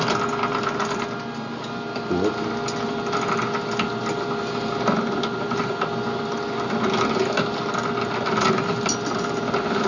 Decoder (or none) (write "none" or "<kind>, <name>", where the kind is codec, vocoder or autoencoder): none